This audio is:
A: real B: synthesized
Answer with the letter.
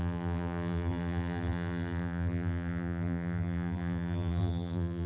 B